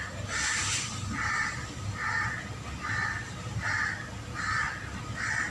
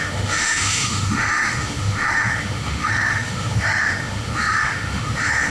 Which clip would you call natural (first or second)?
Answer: first